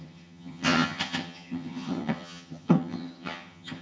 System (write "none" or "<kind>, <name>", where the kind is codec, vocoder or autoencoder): vocoder, HiFi-GAN